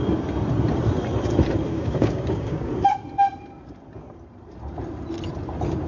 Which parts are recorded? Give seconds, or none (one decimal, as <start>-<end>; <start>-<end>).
0.0-1.7; 2.7-5.9